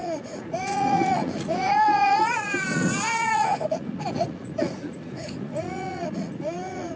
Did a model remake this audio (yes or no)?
yes